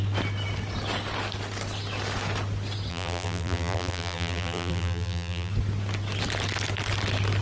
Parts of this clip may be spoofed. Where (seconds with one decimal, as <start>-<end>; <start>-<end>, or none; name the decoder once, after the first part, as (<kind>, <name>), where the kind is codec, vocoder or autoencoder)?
2.9-5.5 (vocoder, BigVGAN v2)